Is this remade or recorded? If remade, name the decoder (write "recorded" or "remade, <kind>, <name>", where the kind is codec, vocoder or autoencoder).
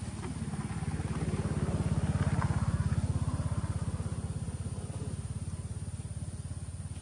recorded